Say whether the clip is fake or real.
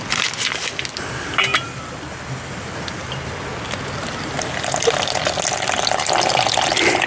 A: real